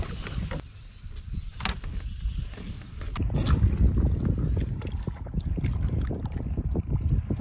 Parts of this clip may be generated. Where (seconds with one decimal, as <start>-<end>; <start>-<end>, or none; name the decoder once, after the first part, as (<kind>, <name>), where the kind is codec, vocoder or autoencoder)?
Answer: none